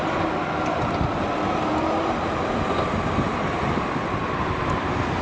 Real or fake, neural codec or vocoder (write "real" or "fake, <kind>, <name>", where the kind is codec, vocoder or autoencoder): real